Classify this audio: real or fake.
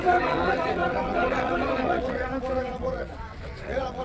fake